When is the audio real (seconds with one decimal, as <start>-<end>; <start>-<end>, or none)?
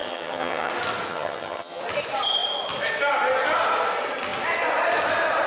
0.7-1.1; 1.8-5.5